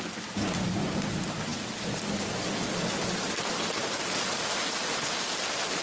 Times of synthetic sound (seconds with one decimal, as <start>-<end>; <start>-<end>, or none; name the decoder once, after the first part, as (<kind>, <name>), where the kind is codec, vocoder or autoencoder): none